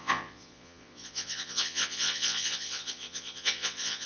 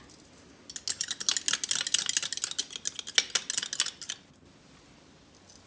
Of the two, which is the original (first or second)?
second